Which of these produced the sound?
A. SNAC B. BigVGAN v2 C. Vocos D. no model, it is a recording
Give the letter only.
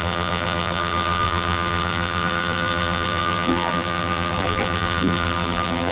B